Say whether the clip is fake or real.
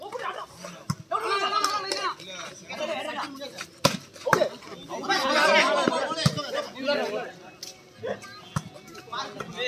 real